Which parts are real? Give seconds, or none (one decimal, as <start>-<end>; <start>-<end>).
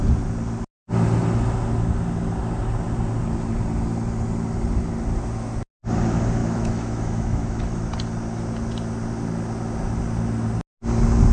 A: 0.0-6.4; 7.8-11.3